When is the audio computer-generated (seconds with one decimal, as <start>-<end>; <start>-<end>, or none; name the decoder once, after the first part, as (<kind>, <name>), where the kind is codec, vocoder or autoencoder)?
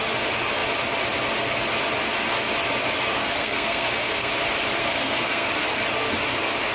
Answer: 3.2-4.3 (codec, SNAC); 4.8-5.5